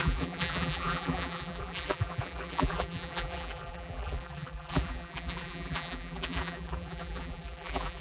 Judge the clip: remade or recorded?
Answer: remade